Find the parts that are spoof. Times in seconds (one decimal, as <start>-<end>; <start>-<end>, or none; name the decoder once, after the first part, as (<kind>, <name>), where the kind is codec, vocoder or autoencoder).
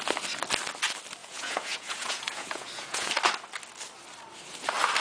1.2-3.1 (vocoder, Vocos)